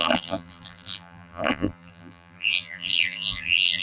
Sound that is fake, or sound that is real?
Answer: fake